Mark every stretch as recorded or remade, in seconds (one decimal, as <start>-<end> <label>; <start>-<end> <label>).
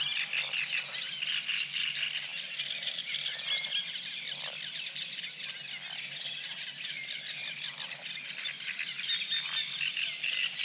0.0-2.3 recorded; 2.3-4.9 remade; 4.9-7.4 recorded; 7.4-8.4 remade; 8.4-10.6 recorded